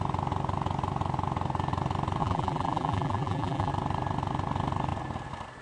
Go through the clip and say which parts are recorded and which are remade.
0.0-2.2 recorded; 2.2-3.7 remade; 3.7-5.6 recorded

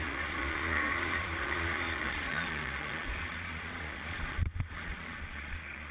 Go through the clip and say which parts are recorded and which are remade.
0.0-5.9 remade

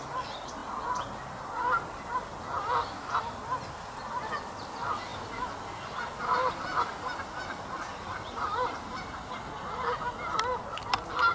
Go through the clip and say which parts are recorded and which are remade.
0.0-11.3 recorded

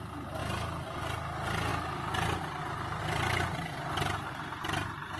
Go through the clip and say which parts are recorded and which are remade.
0.0-5.2 recorded

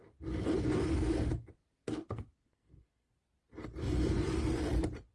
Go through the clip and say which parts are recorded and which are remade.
0.0-1.8 recorded; 1.8-3.1 remade; 3.1-5.1 recorded